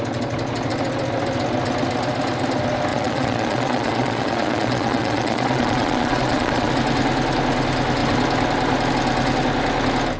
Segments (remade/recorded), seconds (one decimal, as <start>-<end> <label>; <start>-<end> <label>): 0.0-2.9 recorded; 2.9-6.7 remade; 6.7-10.2 recorded